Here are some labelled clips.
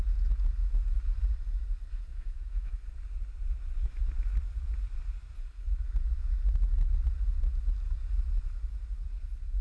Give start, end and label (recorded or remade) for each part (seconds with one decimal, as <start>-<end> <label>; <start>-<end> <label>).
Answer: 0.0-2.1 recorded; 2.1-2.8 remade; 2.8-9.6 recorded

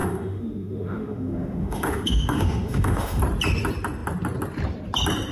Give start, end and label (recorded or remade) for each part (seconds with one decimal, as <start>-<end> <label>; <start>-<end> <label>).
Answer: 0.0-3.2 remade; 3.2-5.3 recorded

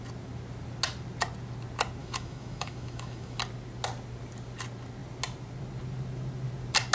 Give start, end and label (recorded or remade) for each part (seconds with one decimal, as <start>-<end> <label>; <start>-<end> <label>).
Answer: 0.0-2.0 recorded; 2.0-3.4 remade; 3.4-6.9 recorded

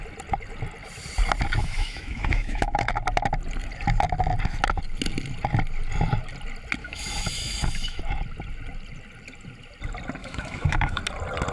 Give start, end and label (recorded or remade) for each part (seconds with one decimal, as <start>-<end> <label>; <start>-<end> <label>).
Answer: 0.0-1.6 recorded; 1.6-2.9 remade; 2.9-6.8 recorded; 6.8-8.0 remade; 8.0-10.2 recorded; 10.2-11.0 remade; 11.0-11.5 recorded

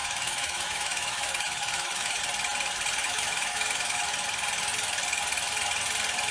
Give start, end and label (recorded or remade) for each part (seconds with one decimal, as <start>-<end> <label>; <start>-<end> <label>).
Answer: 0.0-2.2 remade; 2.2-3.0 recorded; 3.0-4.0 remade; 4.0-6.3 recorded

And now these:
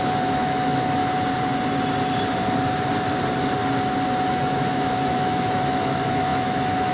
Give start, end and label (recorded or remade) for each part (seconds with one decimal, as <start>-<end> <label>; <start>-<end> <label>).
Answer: 0.0-1.0 remade; 1.0-4.3 recorded; 4.3-6.9 remade

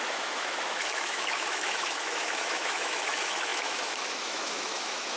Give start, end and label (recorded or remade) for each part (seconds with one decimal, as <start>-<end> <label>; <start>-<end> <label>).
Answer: 0.0-5.2 remade

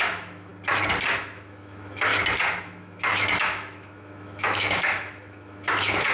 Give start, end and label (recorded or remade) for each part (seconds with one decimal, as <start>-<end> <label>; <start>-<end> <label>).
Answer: 0.0-0.5 remade; 0.5-1.1 recorded; 1.1-2.1 remade; 2.1-2.6 recorded; 2.6-6.1 remade